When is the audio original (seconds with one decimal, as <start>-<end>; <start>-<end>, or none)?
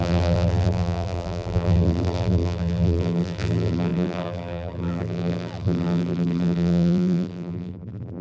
none